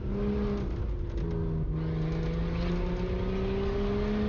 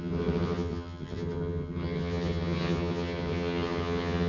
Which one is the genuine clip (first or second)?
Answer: first